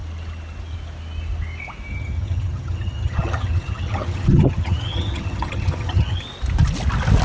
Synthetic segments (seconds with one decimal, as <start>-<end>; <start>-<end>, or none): 1.9-6.2

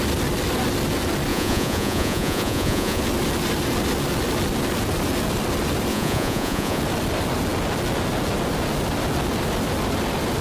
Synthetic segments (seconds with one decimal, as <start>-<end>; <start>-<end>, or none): 1.3-3.0; 5.9-6.8

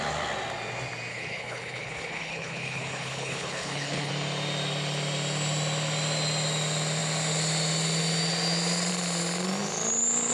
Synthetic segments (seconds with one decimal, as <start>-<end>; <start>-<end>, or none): 1.1-4.1

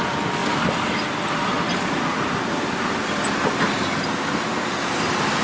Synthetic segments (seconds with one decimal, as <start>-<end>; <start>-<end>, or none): none

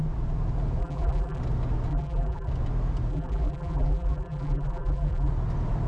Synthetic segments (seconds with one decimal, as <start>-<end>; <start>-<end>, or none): 0.8-1.4; 1.9-2.5; 3.1-5.3

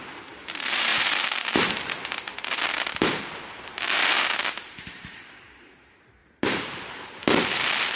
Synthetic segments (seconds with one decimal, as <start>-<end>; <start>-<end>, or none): 0.0-4.0; 4.6-8.0

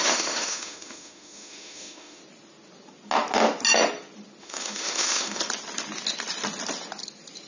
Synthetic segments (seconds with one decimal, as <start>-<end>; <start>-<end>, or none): 0.0-2.2; 4.4-5.4

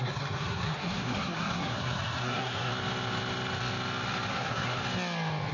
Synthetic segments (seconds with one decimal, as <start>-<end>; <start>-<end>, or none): 0.0-2.7; 4.3-4.8